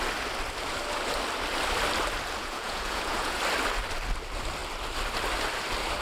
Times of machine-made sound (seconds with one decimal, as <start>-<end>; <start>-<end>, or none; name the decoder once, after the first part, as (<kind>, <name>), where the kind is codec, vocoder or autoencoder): 2.4-3.4 (vocoder, Vocos)